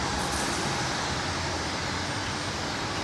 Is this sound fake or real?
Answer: real